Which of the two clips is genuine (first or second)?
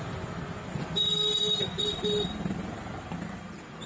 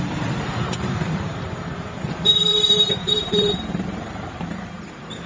first